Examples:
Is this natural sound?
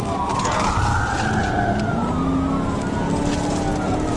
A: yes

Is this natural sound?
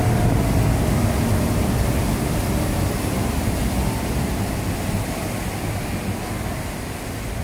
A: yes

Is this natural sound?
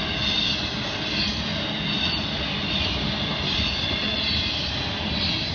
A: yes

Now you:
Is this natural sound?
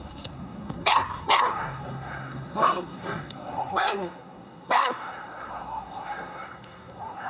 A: no